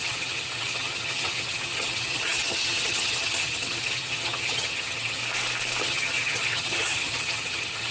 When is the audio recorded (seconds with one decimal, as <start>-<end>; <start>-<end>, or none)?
5.2-5.8